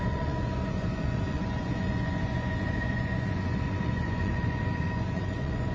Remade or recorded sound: remade